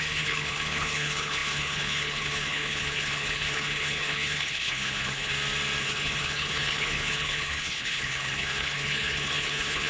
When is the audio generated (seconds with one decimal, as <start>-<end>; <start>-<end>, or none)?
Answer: 0.0-5.3; 5.8-9.9